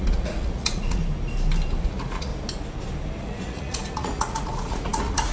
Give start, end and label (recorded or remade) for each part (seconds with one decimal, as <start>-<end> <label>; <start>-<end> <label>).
0.0-1.0 remade; 1.0-1.7 recorded; 1.7-2.3 remade; 2.3-3.2 recorded; 3.2-5.3 remade